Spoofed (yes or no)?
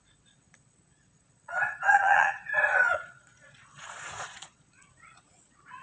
yes